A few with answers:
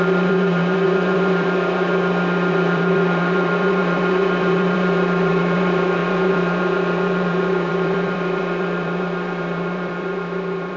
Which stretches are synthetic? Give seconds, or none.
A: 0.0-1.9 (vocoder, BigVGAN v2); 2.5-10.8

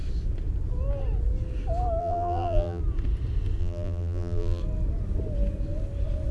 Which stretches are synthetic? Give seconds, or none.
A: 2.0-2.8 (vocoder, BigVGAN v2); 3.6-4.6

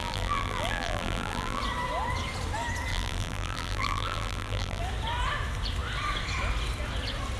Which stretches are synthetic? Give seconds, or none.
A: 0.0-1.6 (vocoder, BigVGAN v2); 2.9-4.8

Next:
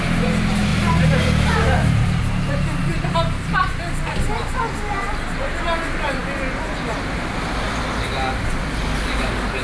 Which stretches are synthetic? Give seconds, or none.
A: 0.7-2.2 (vocoder, BigVGAN v2); 2.9-3.7

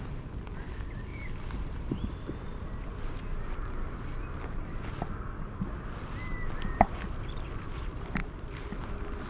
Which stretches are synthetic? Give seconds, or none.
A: 1.1-2.9 (vocoder, BigVGAN v2); 8.2-8.7